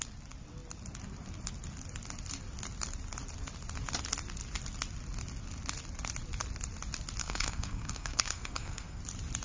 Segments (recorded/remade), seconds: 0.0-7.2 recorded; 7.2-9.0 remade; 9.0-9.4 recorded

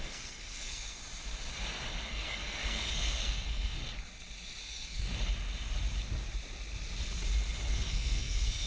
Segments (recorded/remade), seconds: 0.0-1.0 remade; 1.0-2.1 recorded; 2.1-3.8 remade; 3.8-4.6 recorded; 4.6-5.1 remade; 5.1-7.7 recorded; 7.7-8.7 remade